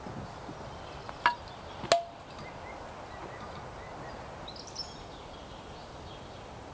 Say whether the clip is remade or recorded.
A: recorded